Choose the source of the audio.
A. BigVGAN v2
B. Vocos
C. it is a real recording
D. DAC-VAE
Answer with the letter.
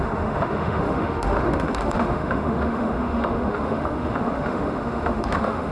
D